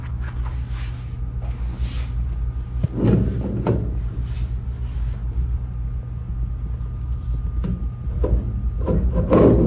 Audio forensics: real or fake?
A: real